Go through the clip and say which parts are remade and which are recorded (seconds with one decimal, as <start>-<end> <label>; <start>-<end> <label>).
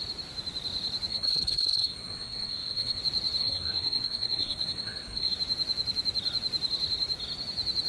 0.0-1.1 recorded; 1.1-3.0 remade; 3.0-3.4 recorded; 3.4-5.3 remade; 5.3-7.9 recorded